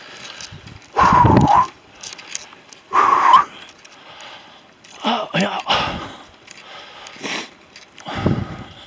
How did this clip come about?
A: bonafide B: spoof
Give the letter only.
A